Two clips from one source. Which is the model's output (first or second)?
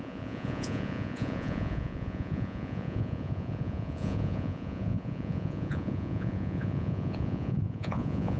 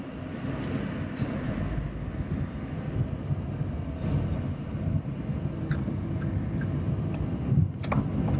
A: first